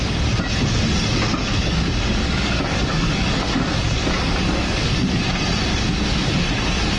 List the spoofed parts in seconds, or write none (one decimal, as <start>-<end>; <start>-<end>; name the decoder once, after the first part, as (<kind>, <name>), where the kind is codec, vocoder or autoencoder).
1.4-5.2 (codec, DAC); 5.7-6.3